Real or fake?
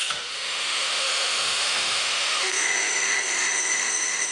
fake